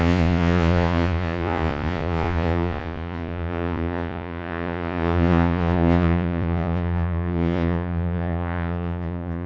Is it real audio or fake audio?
fake